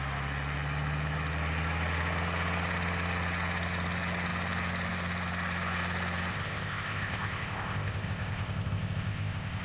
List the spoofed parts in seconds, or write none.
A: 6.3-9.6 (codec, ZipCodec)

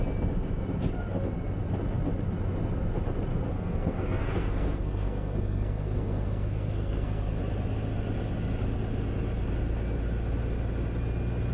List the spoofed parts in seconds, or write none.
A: 3.5-7.4 (codec, SNAC)